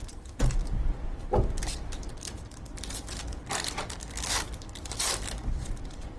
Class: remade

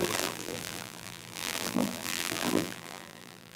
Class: remade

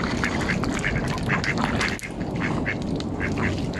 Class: recorded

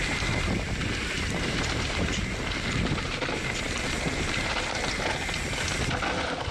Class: recorded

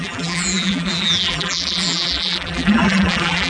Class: remade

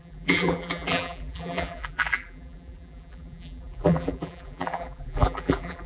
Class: remade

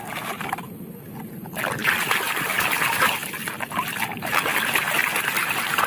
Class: recorded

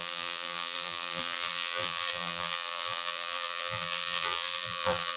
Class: remade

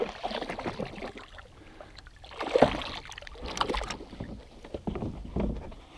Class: recorded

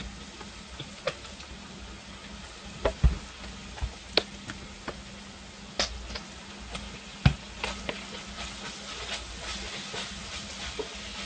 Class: recorded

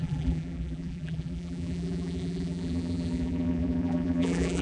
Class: remade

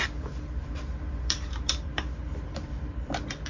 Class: remade